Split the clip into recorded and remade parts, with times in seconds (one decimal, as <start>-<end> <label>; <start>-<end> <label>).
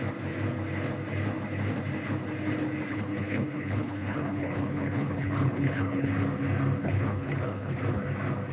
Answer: 0.0-2.9 recorded; 2.9-6.1 remade; 6.1-6.8 recorded; 6.8-7.8 remade; 7.8-8.5 recorded